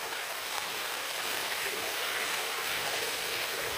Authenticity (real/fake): fake